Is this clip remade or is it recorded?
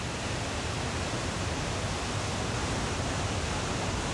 recorded